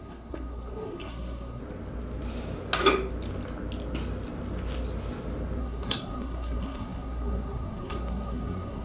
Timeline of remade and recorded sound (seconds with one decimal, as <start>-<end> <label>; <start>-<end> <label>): 0.0-1.6 remade; 1.6-5.6 recorded; 5.6-8.8 remade